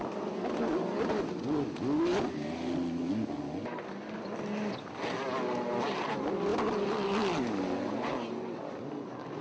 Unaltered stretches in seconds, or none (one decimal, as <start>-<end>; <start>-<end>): 0.0-9.4